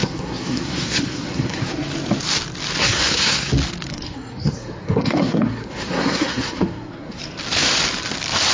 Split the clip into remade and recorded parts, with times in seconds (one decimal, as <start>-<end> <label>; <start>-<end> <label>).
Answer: 0.0-1.7 remade; 1.7-2.8 recorded; 2.8-3.5 remade; 3.5-3.9 recorded; 3.9-7.2 remade; 7.2-8.5 recorded